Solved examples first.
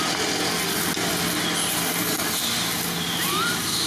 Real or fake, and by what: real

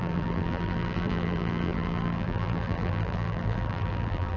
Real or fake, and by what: fake, vocoder, BigVGAN v2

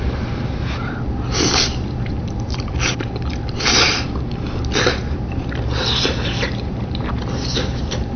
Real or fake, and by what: fake, vocoder, BigVGAN v2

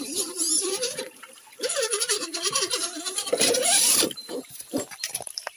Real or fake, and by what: fake, vocoder, BigVGAN v2